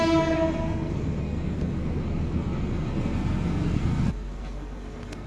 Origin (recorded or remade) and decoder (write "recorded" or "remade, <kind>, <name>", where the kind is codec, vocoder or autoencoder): remade, codec, SNAC